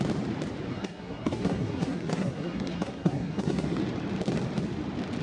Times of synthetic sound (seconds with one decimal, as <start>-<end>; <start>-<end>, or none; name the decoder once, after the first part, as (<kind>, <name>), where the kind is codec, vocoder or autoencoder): 0.7-3.8 (codec, SNAC)